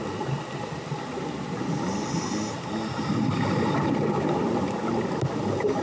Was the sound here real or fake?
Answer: real